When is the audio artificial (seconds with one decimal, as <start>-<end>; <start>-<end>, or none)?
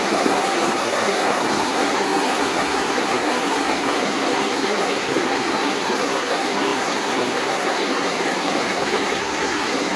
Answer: 0.0-10.0